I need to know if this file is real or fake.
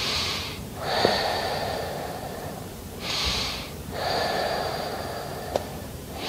fake